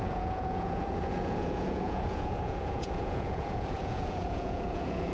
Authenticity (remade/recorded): remade